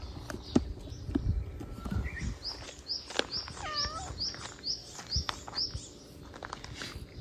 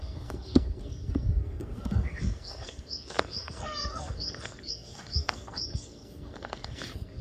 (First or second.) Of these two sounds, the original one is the first